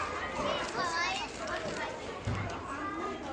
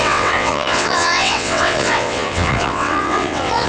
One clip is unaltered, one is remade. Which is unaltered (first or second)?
first